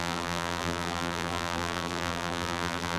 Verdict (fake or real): fake